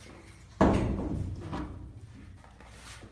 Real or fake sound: real